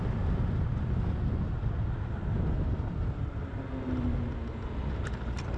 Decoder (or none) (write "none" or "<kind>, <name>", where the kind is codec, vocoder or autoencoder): none